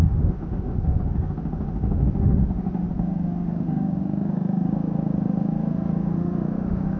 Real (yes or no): no